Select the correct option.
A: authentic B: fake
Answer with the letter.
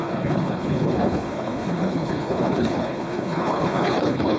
B